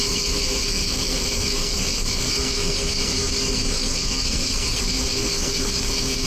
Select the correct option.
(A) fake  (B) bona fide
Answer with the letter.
A